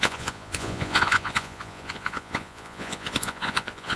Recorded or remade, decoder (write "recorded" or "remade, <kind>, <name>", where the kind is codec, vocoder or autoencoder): remade, vocoder, Vocos